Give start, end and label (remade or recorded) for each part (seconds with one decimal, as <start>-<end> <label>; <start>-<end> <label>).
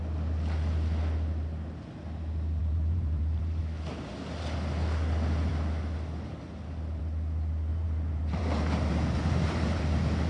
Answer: 0.0-2.6 recorded; 2.6-3.6 remade; 3.6-7.7 recorded; 7.7-9.8 remade; 9.8-10.3 recorded